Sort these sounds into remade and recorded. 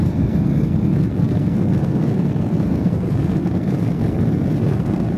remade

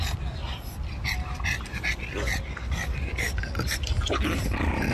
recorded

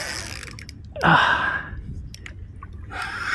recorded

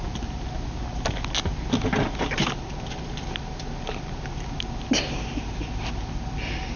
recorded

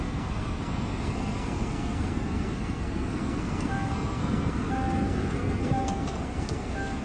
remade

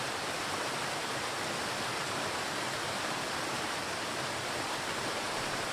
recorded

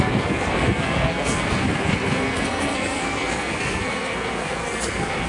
remade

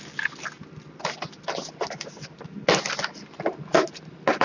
recorded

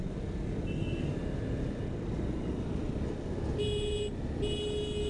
recorded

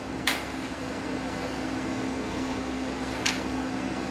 remade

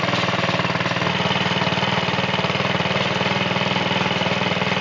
recorded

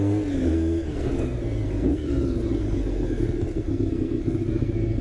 remade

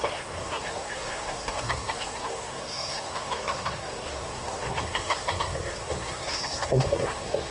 remade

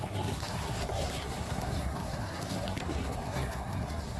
remade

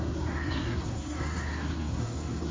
remade